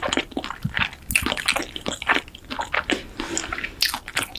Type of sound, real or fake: real